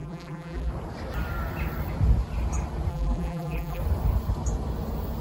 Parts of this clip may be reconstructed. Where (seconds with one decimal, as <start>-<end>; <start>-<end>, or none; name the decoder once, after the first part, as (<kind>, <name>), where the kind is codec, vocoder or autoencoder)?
0.0-0.7 (vocoder, BigVGAN v2); 2.9-3.8